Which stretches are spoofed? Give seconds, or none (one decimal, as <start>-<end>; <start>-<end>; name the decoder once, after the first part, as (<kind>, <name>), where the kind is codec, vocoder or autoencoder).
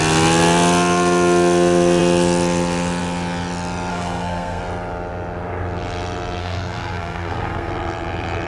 3.9-4.6 (codec, SNAC); 6.4-7.7